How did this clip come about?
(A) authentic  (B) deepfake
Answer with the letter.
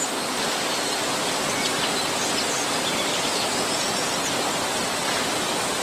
A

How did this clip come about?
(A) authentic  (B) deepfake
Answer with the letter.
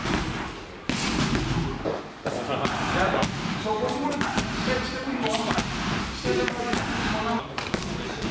A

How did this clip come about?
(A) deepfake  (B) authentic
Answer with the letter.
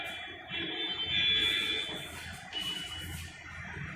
B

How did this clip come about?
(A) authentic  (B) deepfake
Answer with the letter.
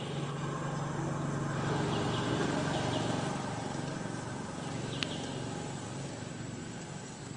A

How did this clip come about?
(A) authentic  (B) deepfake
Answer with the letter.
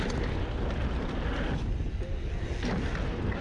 A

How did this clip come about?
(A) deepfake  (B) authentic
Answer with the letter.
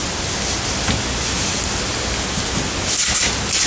B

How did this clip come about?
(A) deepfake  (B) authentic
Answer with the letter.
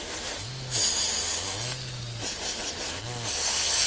B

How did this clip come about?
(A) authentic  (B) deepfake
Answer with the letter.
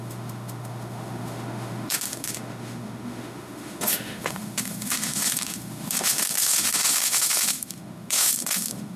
B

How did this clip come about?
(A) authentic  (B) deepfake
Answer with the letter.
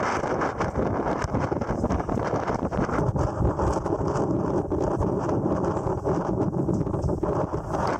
B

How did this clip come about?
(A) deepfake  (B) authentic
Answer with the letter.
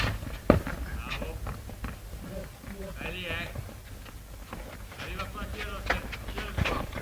B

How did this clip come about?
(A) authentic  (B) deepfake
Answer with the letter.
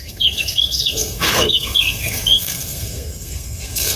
B